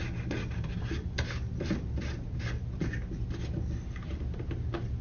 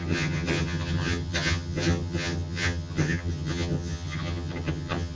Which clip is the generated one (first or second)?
second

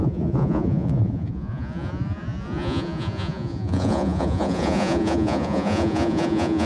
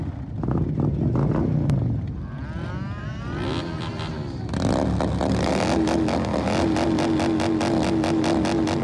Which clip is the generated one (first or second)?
first